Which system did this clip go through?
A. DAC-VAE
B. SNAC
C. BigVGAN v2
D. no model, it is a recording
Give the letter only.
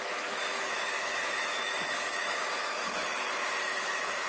A